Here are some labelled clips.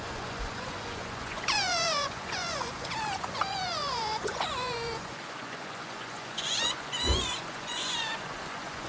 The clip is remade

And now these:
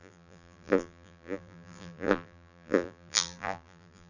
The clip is remade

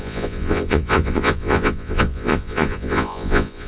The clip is remade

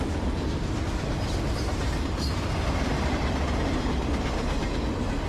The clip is recorded